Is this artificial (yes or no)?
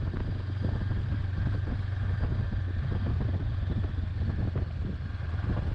no